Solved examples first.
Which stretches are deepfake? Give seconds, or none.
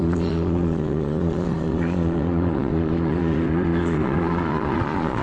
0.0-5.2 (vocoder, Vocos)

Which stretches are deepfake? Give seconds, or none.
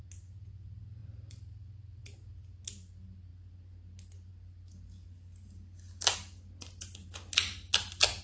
1.0-2.0 (vocoder, BigVGAN v2)